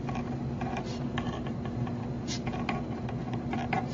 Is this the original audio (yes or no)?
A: yes